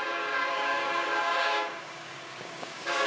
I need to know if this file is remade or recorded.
remade